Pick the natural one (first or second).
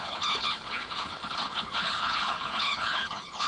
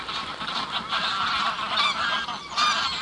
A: second